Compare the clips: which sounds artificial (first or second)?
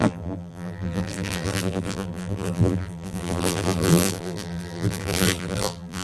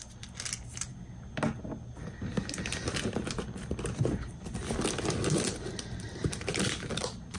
first